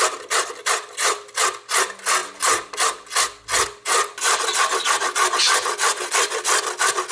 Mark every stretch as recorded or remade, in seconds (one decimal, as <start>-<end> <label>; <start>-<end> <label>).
0.0-7.1 recorded